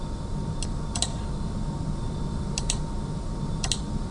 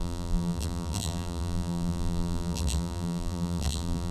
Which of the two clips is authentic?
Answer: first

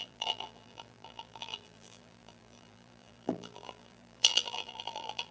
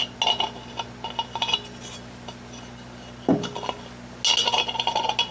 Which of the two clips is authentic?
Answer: second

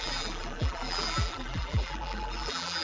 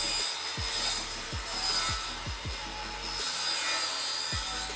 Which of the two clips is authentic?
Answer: second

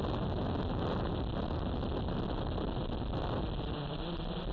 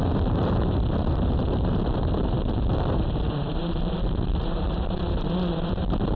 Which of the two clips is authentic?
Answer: first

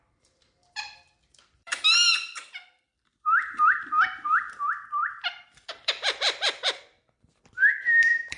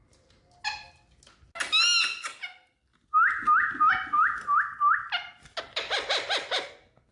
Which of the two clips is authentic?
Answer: second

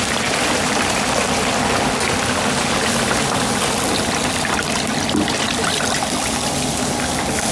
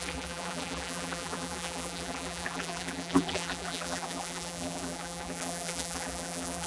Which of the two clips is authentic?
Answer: first